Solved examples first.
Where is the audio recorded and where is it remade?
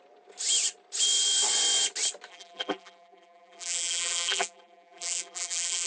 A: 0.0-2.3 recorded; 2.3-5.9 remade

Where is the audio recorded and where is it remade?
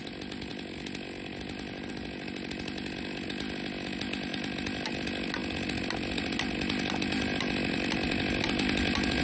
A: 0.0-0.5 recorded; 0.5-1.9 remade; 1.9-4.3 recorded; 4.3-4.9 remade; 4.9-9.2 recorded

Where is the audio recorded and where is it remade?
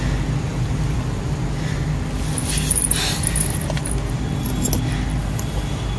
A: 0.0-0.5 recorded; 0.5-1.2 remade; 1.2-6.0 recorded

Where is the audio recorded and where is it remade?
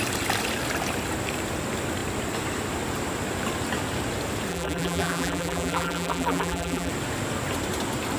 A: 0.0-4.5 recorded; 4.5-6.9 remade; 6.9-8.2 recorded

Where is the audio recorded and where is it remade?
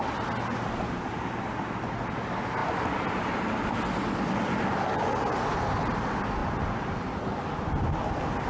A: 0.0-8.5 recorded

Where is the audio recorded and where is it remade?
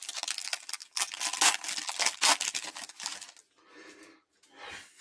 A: 0.0-5.0 recorded